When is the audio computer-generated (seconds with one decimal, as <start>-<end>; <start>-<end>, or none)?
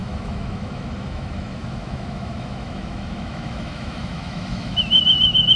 0.0-5.6